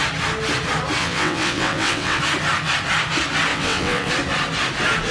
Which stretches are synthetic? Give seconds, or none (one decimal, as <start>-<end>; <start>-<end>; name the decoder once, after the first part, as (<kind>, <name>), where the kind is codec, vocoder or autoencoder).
1.0-2.2 (vocoder, WaveNeXt); 3.5-4.1